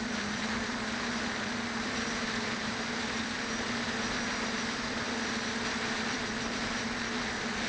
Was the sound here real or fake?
fake